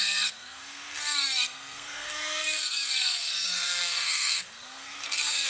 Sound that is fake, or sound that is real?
fake